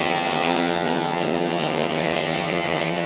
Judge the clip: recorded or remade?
remade